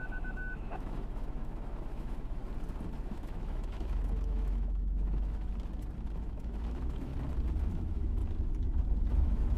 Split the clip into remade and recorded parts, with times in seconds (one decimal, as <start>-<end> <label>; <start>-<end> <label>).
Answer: 0.0-2.4 remade; 2.4-3.0 recorded; 3.0-5.5 remade; 5.5-6.2 recorded; 6.2-7.1 remade; 7.1-7.7 recorded; 7.7-8.2 remade; 8.2-9.1 recorded; 9.1-9.6 remade